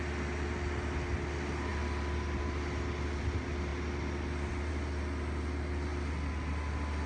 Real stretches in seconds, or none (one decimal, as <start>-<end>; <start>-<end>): 0.0-7.1